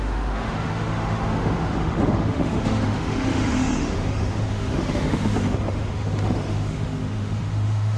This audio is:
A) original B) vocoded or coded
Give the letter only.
B